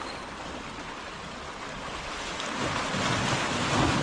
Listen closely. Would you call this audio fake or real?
real